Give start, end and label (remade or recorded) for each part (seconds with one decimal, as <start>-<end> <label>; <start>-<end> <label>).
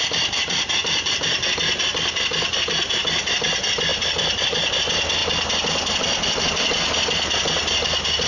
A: 0.0-3.9 recorded; 3.9-4.7 remade; 4.7-8.3 recorded